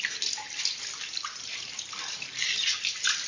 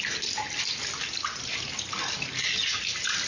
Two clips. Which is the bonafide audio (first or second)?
second